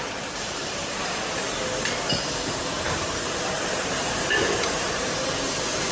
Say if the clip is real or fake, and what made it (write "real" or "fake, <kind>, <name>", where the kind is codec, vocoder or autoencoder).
fake, vocoder, BigVGAN v2